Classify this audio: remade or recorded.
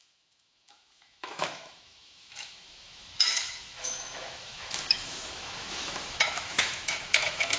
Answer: remade